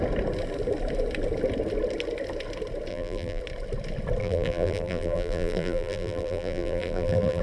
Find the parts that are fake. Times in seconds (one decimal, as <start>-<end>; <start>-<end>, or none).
2.9-3.4; 4.2-7.4